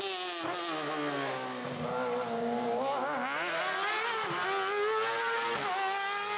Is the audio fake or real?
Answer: real